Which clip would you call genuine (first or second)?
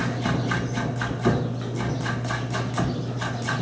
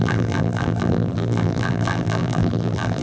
first